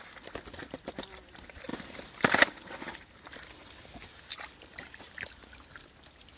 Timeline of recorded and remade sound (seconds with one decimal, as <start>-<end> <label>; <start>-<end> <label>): 0.0-1.7 recorded; 1.7-4.2 remade; 4.2-6.4 recorded

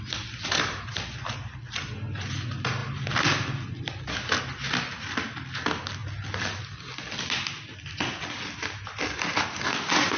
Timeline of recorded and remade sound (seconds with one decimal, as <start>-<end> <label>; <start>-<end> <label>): 0.0-10.2 recorded

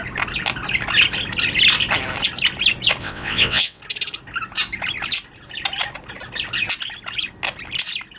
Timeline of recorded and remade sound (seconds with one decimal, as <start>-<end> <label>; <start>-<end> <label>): 0.0-3.0 recorded; 3.0-3.8 remade; 3.8-8.2 recorded

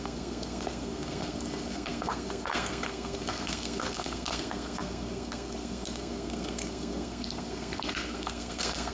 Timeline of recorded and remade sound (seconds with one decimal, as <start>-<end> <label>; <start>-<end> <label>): 0.0-8.9 remade